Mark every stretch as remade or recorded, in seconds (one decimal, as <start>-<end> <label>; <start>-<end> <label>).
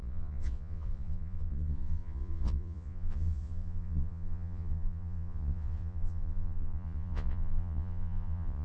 0.0-8.6 remade